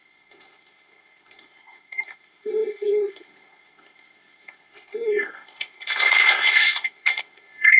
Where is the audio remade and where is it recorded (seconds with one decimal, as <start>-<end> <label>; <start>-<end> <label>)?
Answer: 0.0-7.8 remade